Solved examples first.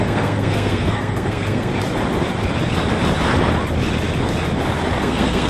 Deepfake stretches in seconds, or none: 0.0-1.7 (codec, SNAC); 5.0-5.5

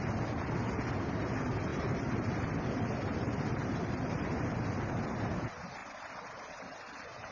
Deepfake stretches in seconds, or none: 1.7-4.9 (vocoder, BigVGAN v2)

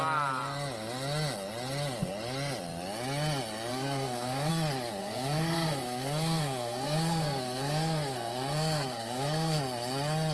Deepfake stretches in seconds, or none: 3.7-4.5 (codec, SNAC); 5.0-9.6

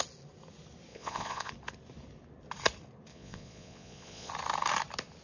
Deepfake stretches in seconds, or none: 0.9-1.5 (vocoder, Vocos); 3.1-4.3

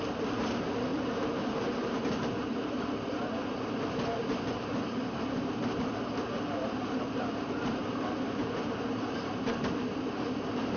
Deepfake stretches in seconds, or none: 0.0-10.8 (vocoder, BigVGAN v2)

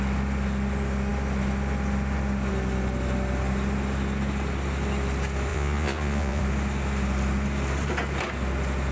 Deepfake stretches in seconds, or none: 5.5-6.4 (vocoder, Vocos)

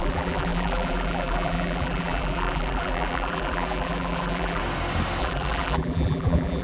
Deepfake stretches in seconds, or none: 0.0-4.6 (vocoder, BigVGAN v2); 5.2-6.6

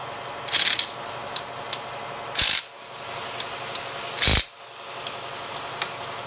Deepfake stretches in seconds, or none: none